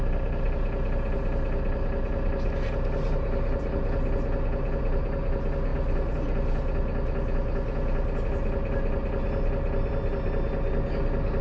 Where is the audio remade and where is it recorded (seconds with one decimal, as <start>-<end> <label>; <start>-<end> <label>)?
0.0-11.4 recorded